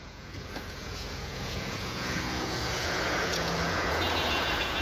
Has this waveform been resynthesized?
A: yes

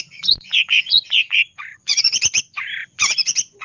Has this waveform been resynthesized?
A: yes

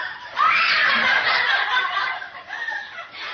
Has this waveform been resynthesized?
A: yes